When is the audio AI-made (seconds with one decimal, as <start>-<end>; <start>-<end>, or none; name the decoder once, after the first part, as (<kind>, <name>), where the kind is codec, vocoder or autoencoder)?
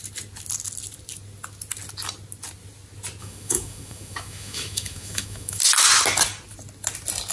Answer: 3.2-5.6 (autoencoder, DAC-VAE)